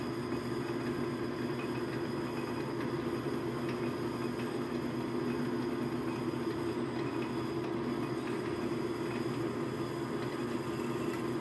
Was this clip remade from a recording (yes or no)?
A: no